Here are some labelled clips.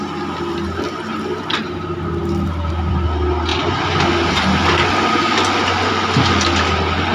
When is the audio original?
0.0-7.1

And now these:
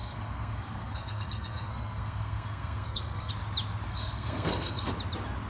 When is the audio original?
3.3-3.9; 4.9-5.5

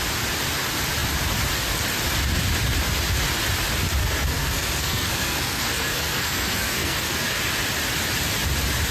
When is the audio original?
0.0-4.0; 7.4-8.9

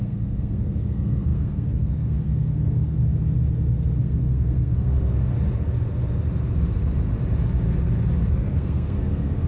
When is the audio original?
3.0-4.0; 5.3-8.3

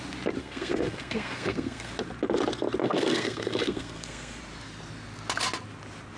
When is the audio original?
0.0-0.4; 1.9-2.8; 4.4-6.2